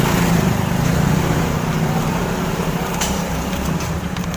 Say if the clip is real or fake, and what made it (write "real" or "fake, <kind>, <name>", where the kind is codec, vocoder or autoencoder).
fake, vocoder, BigVGAN v2